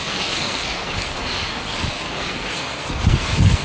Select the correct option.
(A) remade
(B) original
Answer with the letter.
A